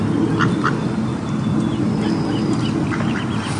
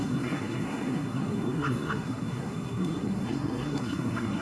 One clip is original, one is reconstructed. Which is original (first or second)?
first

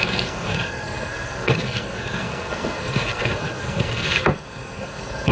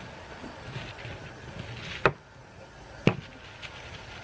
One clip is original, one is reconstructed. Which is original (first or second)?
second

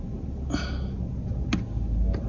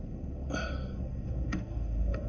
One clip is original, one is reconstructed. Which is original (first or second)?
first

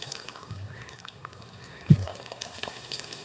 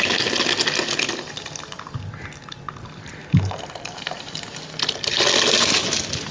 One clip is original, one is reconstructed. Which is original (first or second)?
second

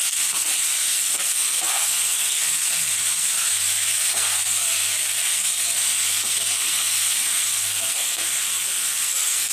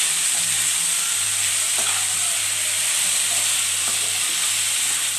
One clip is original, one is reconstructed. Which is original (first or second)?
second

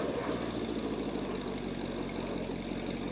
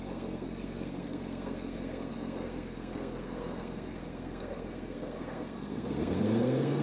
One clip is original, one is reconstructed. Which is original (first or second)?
first